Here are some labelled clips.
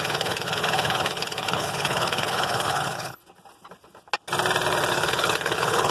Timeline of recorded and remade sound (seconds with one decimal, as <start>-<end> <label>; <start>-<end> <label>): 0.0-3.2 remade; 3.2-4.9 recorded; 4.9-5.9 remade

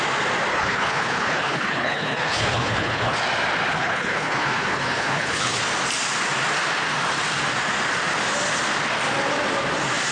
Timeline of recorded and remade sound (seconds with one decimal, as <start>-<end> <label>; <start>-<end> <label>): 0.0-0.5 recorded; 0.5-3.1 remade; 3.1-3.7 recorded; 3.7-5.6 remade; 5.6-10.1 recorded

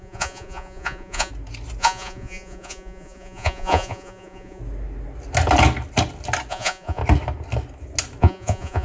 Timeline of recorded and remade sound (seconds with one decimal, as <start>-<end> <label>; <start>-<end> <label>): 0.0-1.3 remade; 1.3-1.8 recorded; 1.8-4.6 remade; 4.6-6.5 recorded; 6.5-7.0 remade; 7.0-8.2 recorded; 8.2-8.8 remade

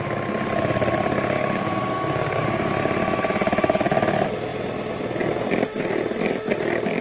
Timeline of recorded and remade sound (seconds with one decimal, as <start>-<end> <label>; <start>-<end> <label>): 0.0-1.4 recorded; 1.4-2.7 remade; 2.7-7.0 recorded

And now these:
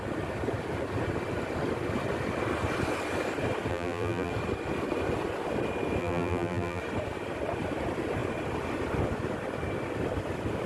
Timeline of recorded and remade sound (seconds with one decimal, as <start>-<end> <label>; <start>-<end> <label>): 0.0-3.7 recorded; 3.7-4.3 remade; 4.3-6.0 recorded; 6.0-6.8 remade; 6.8-10.7 recorded

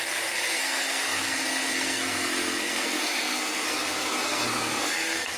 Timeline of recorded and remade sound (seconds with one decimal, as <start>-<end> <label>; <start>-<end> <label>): 0.0-5.4 remade

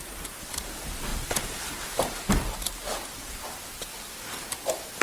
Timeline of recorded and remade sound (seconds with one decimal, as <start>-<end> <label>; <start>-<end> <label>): 0.0-3.9 remade; 3.9-5.0 recorded

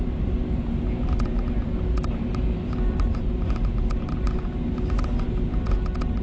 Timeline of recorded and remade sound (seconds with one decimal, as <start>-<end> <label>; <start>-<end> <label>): 0.0-6.2 recorded